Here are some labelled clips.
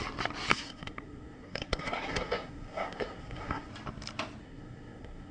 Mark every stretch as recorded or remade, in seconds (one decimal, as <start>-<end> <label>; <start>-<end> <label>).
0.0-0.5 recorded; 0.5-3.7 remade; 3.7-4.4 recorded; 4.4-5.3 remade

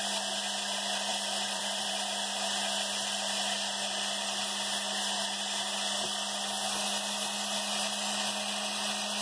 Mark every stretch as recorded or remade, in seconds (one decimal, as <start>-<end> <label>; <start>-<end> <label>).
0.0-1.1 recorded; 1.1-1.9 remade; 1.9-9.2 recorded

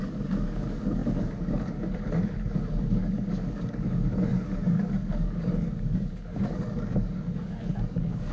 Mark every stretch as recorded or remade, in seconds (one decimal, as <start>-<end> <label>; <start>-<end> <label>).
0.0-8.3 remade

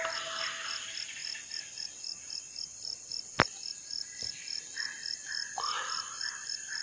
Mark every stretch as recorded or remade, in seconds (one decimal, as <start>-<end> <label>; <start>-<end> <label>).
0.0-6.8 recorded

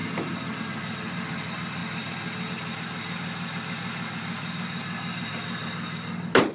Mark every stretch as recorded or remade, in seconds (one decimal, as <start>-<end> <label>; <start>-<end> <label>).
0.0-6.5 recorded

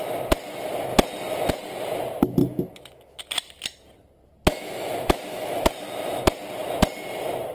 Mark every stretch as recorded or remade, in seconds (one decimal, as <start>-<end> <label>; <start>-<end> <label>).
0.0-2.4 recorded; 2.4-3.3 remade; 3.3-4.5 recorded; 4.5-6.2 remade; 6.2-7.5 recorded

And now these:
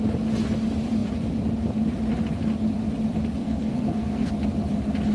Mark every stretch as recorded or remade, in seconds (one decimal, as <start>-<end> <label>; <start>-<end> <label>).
0.0-3.4 recorded; 3.4-4.3 remade; 4.3-5.1 recorded